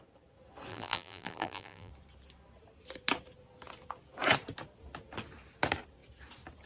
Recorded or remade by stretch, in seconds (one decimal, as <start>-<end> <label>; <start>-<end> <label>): 0.0-0.7 recorded; 0.7-1.9 remade; 1.9-6.7 recorded